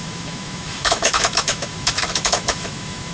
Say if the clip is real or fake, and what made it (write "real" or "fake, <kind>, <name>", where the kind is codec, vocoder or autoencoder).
fake, autoencoder, DAC-VAE